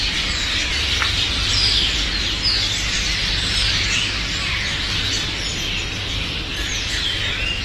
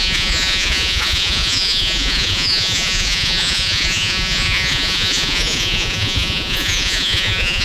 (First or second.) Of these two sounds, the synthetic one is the second